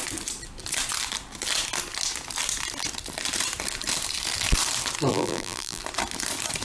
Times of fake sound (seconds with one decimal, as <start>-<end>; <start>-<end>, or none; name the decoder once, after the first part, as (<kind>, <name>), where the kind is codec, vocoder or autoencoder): 5.1-5.8 (vocoder, BigVGAN v2)